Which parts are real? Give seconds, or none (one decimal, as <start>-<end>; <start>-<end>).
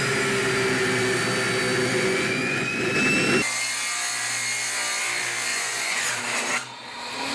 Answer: 0.0-1.9; 2.9-5.5; 6.2-7.3